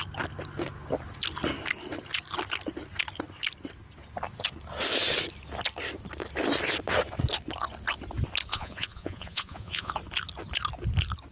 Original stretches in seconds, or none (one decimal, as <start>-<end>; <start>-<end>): 0.0-8.5; 9.9-11.3